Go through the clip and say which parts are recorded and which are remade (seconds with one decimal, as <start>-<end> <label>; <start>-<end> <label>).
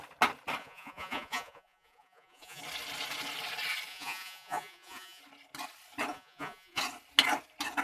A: 0.0-0.6 recorded; 0.6-2.6 remade; 2.6-3.9 recorded; 3.9-5.2 remade; 5.2-6.1 recorded; 6.1-6.8 remade; 6.8-7.8 recorded